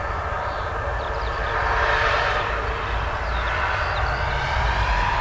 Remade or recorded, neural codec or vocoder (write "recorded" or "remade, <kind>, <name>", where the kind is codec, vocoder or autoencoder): recorded